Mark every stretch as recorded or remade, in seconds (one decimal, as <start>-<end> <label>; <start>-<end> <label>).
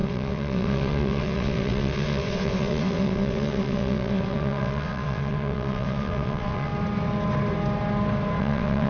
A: 0.0-6.7 remade; 6.7-8.4 recorded; 8.4-8.9 remade